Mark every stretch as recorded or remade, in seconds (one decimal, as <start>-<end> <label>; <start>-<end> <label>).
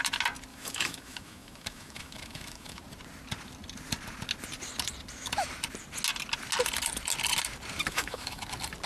0.0-0.5 recorded; 0.5-2.8 remade; 2.8-7.9 recorded; 7.9-8.4 remade; 8.4-8.9 recorded